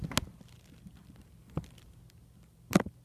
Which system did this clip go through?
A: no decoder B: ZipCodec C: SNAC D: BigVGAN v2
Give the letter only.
A